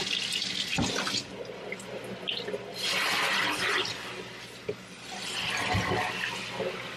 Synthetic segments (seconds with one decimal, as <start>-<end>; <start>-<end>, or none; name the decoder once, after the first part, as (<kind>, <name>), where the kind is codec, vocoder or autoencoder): none